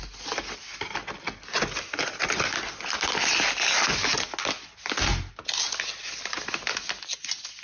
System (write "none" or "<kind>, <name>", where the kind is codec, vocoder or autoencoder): none